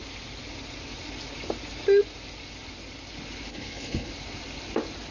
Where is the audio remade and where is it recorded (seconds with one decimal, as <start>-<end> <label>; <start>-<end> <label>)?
0.0-3.5 recorded; 3.5-4.1 remade; 4.1-5.1 recorded